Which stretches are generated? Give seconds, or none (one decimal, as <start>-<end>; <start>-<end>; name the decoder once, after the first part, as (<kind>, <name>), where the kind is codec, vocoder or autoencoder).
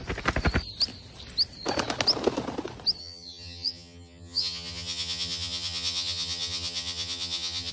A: 3.0-7.7 (vocoder, HiFi-GAN)